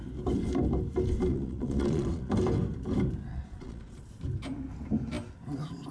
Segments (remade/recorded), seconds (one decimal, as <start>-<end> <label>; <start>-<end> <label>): 0.0-1.3 recorded; 1.3-2.3 remade; 2.3-3.3 recorded; 3.3-4.0 remade; 4.0-5.9 recorded